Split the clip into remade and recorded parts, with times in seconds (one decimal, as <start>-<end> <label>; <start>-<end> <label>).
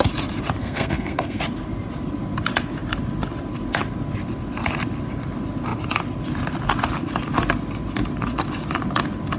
0.0-0.6 recorded; 0.6-1.4 remade; 1.4-9.4 recorded